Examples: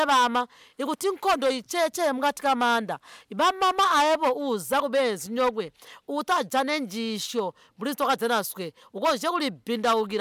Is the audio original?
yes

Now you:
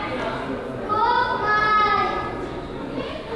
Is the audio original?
yes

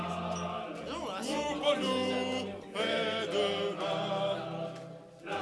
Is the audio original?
yes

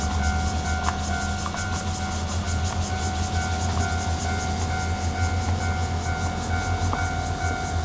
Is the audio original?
yes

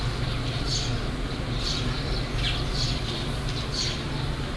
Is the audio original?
yes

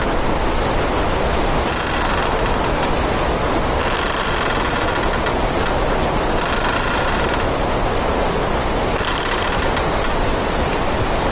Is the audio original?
yes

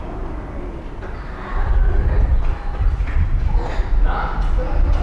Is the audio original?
yes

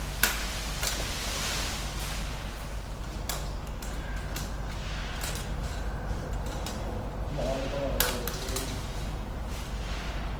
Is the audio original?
yes